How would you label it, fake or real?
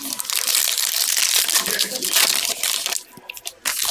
real